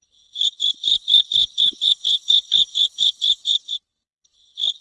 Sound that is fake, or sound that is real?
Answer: fake